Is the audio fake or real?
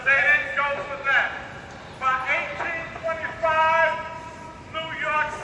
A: real